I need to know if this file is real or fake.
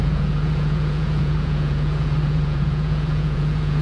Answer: fake